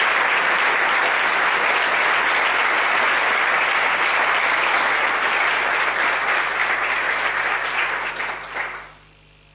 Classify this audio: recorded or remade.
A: recorded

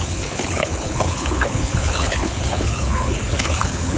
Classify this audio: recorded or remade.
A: remade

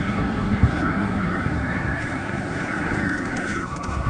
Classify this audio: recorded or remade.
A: remade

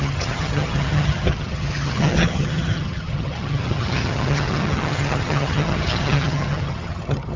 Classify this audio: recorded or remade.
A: remade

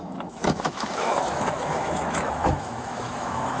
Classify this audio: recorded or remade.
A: remade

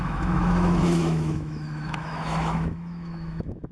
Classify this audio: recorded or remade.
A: remade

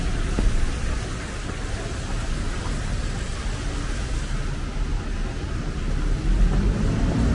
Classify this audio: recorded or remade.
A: recorded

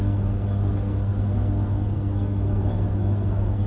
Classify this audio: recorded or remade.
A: remade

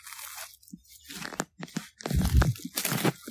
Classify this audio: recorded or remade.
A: recorded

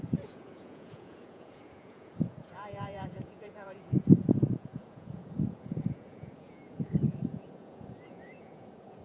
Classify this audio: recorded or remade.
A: remade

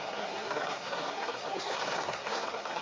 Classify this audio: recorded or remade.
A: remade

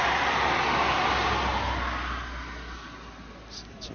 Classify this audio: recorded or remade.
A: recorded